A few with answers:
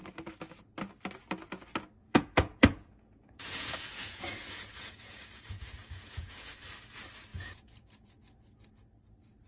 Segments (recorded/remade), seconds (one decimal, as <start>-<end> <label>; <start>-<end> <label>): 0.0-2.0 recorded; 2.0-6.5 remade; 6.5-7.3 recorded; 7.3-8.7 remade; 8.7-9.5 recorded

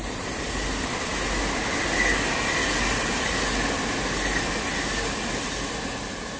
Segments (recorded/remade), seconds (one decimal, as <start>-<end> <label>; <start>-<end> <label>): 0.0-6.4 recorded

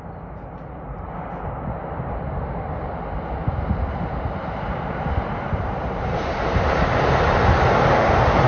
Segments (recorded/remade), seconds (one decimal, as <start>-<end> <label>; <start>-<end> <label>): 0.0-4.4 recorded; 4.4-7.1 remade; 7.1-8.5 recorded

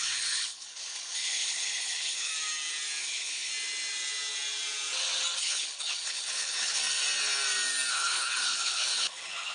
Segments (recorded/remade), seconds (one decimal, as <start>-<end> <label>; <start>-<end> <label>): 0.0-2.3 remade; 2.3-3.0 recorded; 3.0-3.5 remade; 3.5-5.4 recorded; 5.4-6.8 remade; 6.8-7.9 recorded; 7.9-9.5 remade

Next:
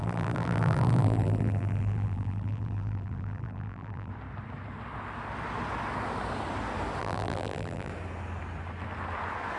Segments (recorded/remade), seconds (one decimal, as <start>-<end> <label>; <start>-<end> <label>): 0.0-4.1 remade; 4.1-7.0 recorded; 7.0-7.9 remade; 7.9-9.6 recorded

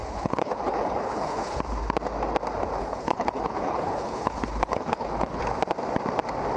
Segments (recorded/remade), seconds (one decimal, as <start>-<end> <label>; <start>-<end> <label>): 0.0-1.6 remade; 1.6-2.8 recorded; 2.8-5.4 remade; 5.4-6.6 recorded

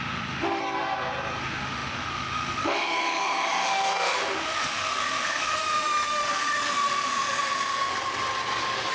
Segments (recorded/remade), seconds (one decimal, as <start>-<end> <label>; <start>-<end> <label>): 0.0-0.6 remade; 0.6-1.4 recorded; 1.4-7.9 remade; 7.9-8.9 recorded

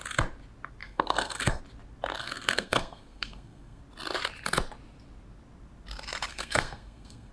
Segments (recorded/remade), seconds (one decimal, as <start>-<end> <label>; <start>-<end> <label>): 0.0-0.8 recorded; 0.8-1.6 remade; 1.6-2.2 recorded; 2.2-3.8 remade; 3.8-6.3 recorded; 6.3-7.3 remade